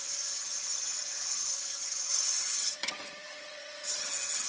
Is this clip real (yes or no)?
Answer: no